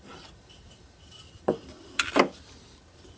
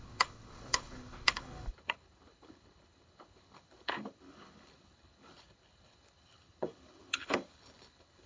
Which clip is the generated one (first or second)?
second